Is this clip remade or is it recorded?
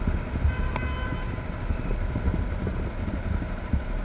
recorded